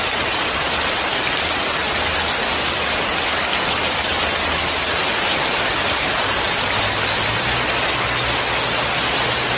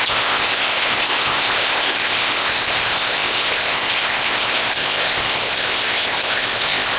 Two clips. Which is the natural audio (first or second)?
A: first